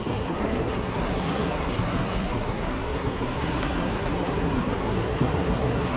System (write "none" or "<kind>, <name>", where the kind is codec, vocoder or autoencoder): codec, SNAC